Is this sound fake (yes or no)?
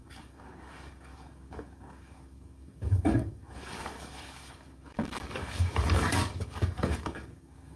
yes